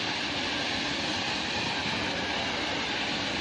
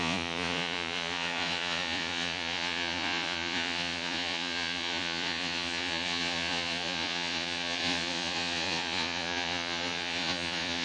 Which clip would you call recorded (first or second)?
first